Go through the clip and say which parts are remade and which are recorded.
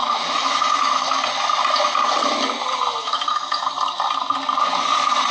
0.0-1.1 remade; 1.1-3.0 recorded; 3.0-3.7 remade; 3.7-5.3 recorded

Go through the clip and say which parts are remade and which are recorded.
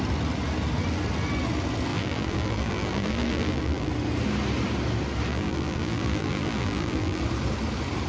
0.0-1.9 recorded; 1.9-3.9 remade; 3.9-5.3 recorded; 5.3-7.2 remade; 7.2-8.1 recorded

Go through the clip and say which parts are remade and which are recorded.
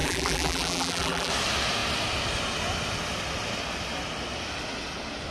0.0-1.3 remade; 1.3-5.3 recorded